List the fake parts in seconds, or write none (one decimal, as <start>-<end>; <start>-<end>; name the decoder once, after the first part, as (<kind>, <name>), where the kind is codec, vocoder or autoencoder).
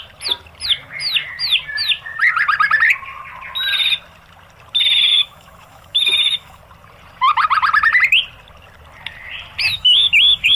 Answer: 5.1-6.6 (autoencoder, DAC-VAE); 9.7-10.6